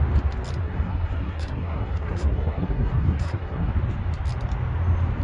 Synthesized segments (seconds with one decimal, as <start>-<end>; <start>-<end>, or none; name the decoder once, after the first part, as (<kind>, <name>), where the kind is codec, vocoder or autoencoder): 0.6-3.7 (codec, SNAC)